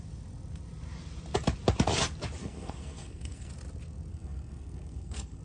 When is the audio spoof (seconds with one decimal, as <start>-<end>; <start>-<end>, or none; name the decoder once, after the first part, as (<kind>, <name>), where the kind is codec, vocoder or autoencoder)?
2.4-3.5 (codec, SNAC); 4.1-5.4